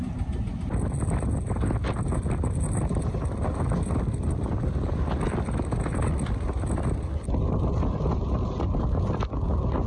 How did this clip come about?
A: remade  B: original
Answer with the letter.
B